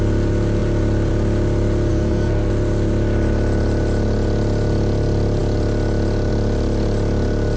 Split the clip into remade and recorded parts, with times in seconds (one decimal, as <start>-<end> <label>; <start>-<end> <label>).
0.0-1.9 recorded; 1.9-2.5 remade; 2.5-7.6 recorded